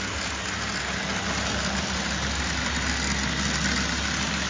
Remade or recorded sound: recorded